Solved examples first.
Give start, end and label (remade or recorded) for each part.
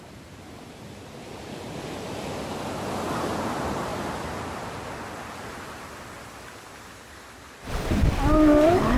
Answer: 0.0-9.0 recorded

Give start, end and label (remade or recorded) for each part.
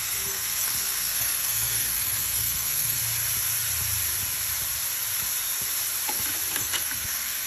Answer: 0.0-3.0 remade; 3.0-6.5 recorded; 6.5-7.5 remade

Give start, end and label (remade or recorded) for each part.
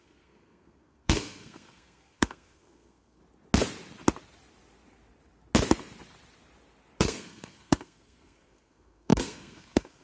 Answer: 0.0-3.2 remade; 3.2-7.0 recorded; 7.0-10.0 remade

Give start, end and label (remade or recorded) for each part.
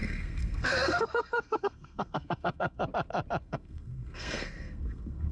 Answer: 0.0-2.8 remade; 2.8-3.4 recorded; 3.4-5.3 remade